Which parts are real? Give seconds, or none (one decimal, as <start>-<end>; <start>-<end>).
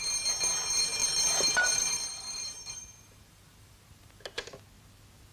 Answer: 0.0-1.0; 4.2-5.3